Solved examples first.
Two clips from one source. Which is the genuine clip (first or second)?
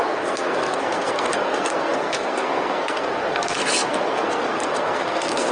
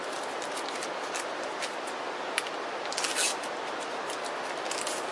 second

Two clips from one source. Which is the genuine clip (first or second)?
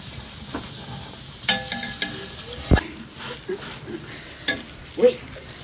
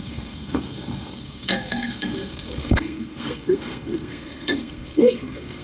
first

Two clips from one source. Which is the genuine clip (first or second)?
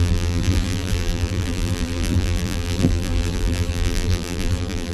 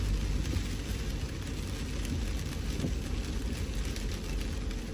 second